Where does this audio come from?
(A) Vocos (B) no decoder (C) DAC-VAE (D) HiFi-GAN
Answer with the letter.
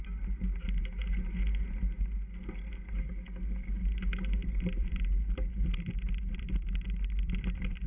B